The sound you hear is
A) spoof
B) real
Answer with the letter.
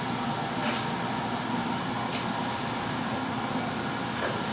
B